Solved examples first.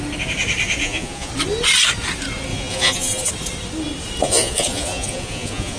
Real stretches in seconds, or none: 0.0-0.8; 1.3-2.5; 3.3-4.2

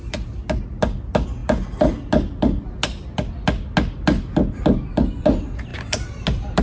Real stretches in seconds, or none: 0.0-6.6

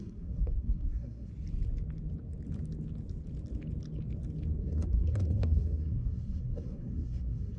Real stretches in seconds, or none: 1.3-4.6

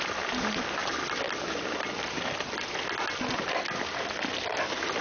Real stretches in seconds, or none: 0.0-5.0